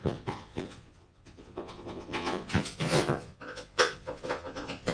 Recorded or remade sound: remade